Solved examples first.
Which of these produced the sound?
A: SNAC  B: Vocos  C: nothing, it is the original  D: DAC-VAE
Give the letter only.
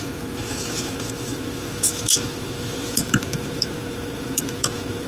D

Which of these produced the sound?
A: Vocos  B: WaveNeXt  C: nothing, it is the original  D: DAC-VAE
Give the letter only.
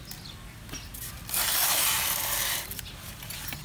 C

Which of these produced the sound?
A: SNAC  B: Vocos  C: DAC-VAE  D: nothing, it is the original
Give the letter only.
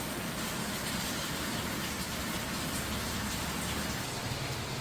D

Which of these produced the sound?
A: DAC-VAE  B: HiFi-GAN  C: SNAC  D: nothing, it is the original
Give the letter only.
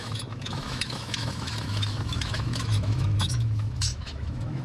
A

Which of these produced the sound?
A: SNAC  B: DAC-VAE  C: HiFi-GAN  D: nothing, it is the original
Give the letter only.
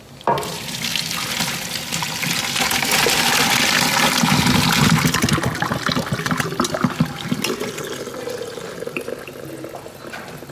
D